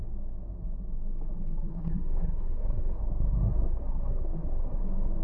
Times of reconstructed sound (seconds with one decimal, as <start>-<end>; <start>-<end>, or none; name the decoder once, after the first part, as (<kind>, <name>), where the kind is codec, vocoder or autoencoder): 1.7-4.8 (codec, SNAC)